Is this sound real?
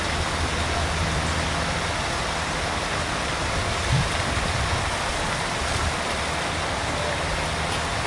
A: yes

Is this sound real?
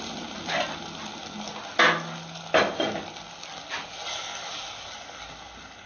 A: yes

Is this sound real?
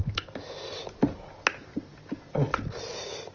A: yes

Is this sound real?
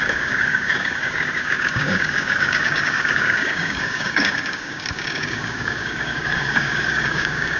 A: no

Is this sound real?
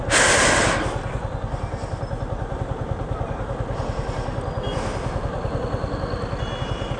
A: yes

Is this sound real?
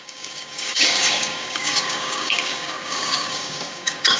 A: no